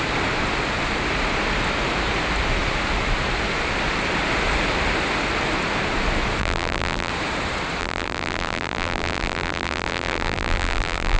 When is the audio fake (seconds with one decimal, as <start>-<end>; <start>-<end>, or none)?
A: 6.4-7.1; 7.8-11.2